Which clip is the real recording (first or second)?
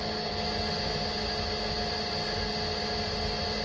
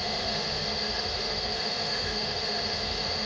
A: first